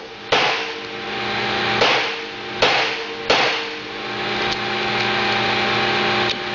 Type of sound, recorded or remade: recorded